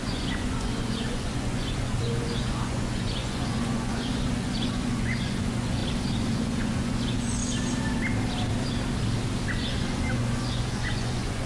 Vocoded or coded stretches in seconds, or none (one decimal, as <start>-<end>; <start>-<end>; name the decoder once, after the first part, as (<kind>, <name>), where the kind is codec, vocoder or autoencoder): 0.0-5.8 (vocoder, Vocos); 6.3-7.4; 9.5-11.5